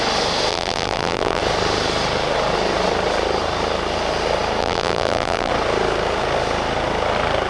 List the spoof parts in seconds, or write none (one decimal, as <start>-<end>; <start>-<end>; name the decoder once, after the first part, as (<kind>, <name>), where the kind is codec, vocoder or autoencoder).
0.5-1.4 (vocoder, BigVGAN v2); 4.6-5.5